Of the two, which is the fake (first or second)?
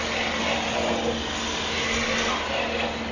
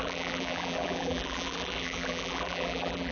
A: second